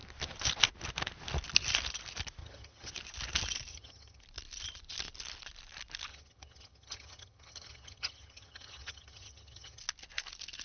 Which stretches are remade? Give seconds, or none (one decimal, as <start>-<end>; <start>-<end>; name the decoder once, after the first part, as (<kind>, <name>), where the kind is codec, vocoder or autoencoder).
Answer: 2.4-2.9 (vocoder, HiFi-GAN); 3.7-4.2; 6.1-9.8